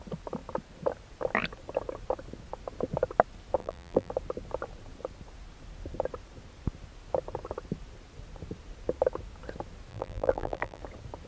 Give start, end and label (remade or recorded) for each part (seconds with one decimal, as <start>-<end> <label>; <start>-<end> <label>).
0.0-3.6 recorded; 3.6-4.1 remade; 4.1-9.9 recorded; 9.9-10.8 remade; 10.8-11.3 recorded